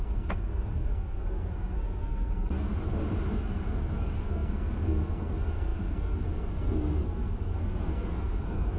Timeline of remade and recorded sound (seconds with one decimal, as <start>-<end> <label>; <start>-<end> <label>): 0.0-2.7 remade; 2.7-3.3 recorded; 3.3-8.8 remade

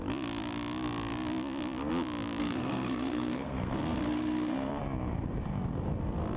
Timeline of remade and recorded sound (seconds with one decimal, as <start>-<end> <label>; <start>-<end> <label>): 0.0-2.4 recorded; 2.4-4.7 remade; 4.7-6.4 recorded

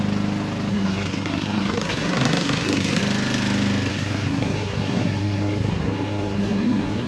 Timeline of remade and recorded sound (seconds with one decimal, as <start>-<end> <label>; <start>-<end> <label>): 0.0-0.7 recorded; 0.7-3.0 remade; 3.0-3.9 recorded; 3.9-7.1 remade

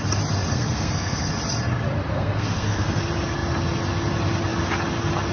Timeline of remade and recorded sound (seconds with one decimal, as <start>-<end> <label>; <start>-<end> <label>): 0.0-0.5 recorded; 0.5-1.3 remade; 1.3-2.1 recorded; 2.1-3.0 remade; 3.0-5.3 recorded

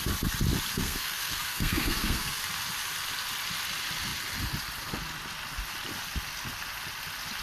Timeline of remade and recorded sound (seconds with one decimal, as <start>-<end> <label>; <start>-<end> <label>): 0.0-0.7 recorded; 0.7-2.4 remade; 2.4-7.4 recorded

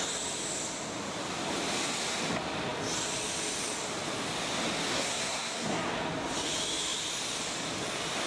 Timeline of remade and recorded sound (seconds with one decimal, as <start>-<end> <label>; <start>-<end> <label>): 0.0-4.9 recorded; 4.9-5.9 remade; 5.9-8.3 recorded

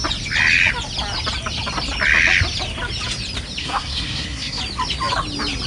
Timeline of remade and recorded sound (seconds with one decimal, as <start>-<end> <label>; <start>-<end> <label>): 0.0-3.6 recorded; 3.6-4.6 remade; 4.6-5.7 recorded